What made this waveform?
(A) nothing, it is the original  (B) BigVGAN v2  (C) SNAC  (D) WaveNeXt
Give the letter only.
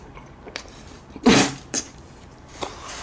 B